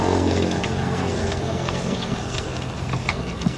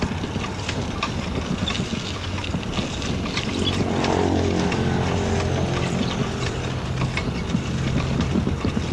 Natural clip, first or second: second